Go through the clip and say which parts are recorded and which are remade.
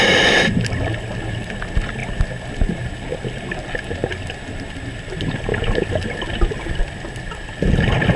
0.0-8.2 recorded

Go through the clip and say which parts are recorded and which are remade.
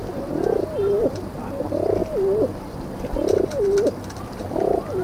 0.0-5.0 recorded